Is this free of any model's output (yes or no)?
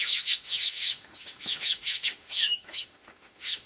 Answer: no